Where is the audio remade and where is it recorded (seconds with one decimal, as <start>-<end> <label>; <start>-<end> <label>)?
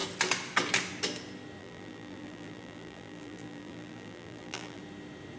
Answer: 0.0-1.6 recorded; 1.6-4.8 remade; 4.8-5.4 recorded